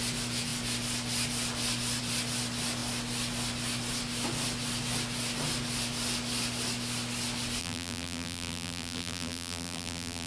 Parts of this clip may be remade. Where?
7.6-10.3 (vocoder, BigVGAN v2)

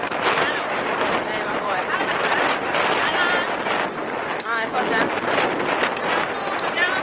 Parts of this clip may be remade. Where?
0.0-1.8 (vocoder, BigVGAN v2); 6.0-7.0

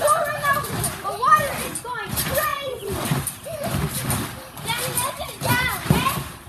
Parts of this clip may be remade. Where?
2.5-6.5 (vocoder, BigVGAN v2)

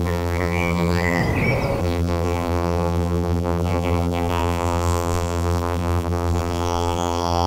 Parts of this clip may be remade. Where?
0.0-1.2 (vocoder, BigVGAN v2); 1.8-7.5